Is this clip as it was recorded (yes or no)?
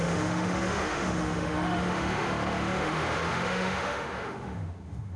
no